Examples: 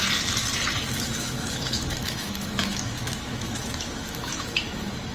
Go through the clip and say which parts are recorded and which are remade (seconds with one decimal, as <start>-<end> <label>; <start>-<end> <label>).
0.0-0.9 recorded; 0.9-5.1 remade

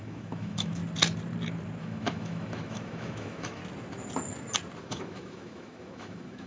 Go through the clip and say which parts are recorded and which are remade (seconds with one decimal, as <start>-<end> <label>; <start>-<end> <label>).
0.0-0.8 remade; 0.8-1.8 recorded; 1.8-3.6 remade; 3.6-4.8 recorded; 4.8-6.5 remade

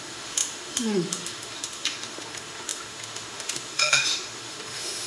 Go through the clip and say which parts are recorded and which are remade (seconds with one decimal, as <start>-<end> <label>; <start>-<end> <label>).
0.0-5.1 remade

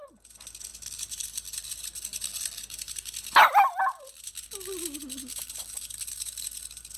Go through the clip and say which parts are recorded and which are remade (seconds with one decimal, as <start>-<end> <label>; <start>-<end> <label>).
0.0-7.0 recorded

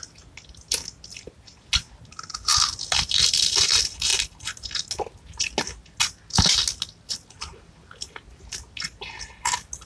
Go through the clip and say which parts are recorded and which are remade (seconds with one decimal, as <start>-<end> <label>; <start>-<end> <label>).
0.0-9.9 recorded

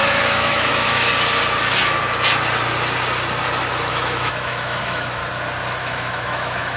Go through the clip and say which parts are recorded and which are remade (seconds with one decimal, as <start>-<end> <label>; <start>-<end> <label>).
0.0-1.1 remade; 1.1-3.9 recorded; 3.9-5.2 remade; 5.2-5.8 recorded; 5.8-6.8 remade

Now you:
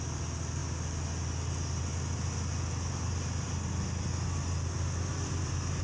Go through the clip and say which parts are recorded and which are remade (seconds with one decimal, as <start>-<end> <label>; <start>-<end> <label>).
0.0-5.8 recorded

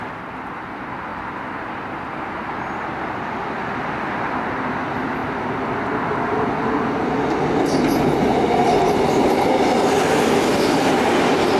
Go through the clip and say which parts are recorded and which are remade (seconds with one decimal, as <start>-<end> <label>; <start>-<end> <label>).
0.0-11.6 recorded